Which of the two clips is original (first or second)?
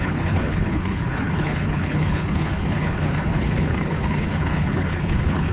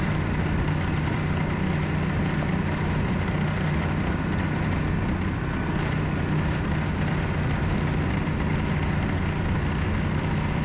second